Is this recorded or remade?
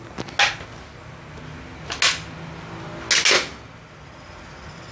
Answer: recorded